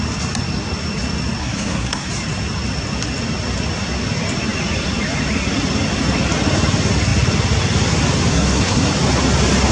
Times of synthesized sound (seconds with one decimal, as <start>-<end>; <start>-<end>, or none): 1.4-2.1; 8.3-8.9